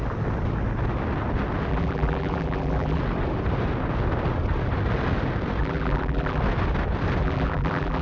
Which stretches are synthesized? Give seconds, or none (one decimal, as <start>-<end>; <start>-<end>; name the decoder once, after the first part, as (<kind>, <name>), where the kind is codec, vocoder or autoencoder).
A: 1.7-3.0 (vocoder, BigVGAN v2); 5.6-6.4; 7.2-8.0